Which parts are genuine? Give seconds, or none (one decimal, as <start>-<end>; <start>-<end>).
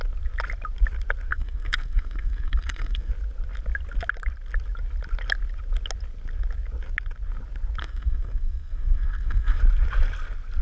0.0-1.3; 3.1-7.8; 9.6-10.6